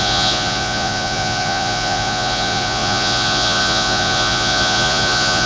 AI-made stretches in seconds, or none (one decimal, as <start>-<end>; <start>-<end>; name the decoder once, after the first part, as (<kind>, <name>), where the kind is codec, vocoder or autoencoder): 0.0-5.5 (vocoder, Vocos)